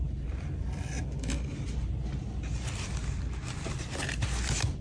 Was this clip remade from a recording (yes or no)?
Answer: no